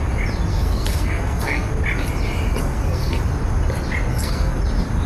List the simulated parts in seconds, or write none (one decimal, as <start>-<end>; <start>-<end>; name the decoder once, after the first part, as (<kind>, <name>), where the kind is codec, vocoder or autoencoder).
0.5-1.7 (codec, SNAC); 2.6-3.2; 4.1-4.6